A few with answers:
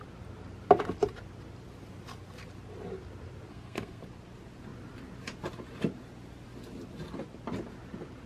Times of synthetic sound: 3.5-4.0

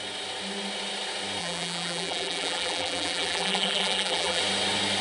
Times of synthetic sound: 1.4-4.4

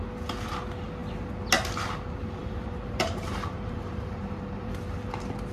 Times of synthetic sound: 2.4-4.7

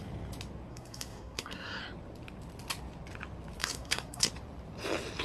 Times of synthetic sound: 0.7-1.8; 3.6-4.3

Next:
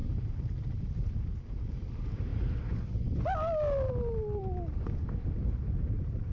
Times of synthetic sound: 2.3-3.1; 5.4-6.3

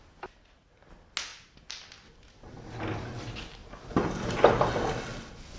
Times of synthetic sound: 1.3-2.5; 3.6-4.3